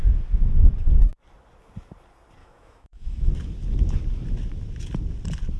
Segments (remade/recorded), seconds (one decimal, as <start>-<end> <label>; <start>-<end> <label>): 0.0-2.4 recorded; 2.4-3.3 remade; 3.3-5.6 recorded